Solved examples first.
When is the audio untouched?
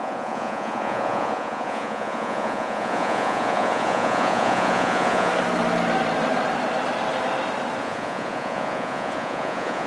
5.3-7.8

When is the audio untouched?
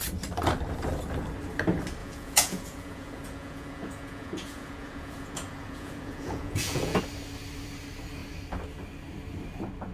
0.0-2.0; 7.0-9.9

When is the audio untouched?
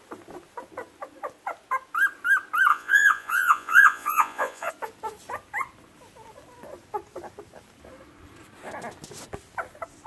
0.0-2.7; 4.7-10.1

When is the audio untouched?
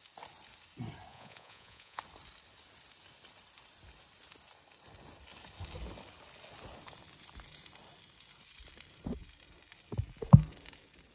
0.0-1.1; 2.0-11.1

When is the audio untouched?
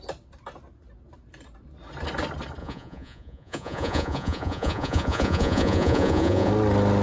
0.0-2.6; 6.5-7.0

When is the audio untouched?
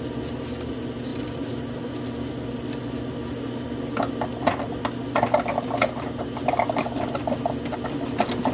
0.0-8.5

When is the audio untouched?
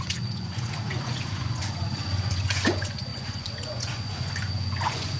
none